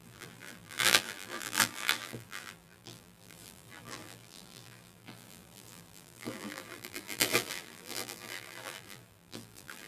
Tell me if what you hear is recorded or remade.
remade